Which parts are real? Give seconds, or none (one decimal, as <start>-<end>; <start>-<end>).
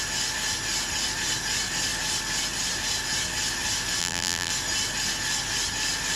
0.0-4.0; 4.5-6.2